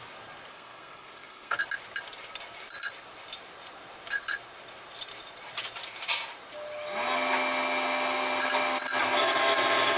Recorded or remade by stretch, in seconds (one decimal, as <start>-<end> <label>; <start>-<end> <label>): 0.0-0.5 recorded; 0.5-1.6 remade; 1.6-10.0 recorded